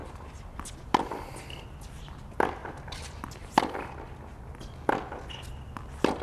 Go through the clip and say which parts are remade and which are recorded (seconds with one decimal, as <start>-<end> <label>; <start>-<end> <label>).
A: 0.0-0.6 remade; 0.6-2.6 recorded; 2.6-3.5 remade; 3.5-6.2 recorded